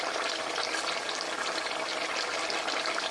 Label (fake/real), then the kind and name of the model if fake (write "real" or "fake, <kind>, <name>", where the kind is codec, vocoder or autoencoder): real